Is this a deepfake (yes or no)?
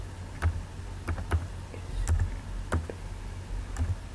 no